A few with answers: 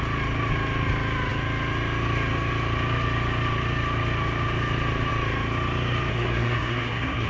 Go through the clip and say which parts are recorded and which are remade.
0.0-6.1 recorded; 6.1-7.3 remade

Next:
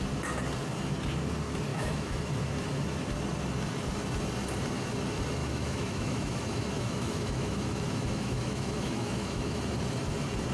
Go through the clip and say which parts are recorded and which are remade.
0.0-1.7 recorded; 1.7-2.2 remade; 2.2-5.4 recorded; 5.4-9.6 remade; 9.6-10.5 recorded

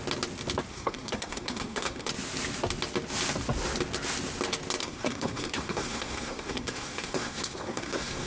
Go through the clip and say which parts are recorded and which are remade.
0.0-0.7 recorded; 0.7-2.1 remade; 2.1-4.8 recorded; 4.8-8.3 remade